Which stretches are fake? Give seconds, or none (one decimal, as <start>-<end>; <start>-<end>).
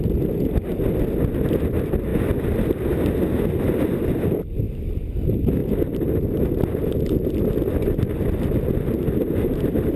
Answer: none